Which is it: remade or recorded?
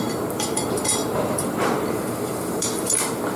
remade